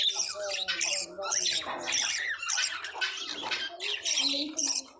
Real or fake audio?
real